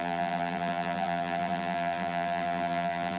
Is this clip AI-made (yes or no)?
yes